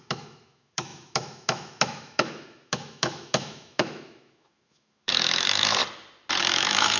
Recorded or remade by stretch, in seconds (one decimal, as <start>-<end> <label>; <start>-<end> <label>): 0.0-5.8 remade; 5.8-6.4 recorded; 6.4-7.0 remade